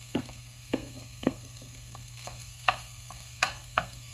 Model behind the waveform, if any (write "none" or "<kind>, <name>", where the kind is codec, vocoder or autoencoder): codec, SNAC